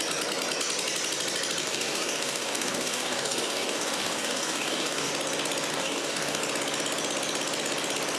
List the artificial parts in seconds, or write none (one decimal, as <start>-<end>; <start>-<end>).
1.6-5.1; 5.7-6.4